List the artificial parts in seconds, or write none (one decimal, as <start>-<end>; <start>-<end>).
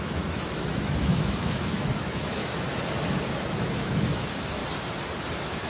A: 0.0-2.5; 3.5-4.6; 5.3-5.7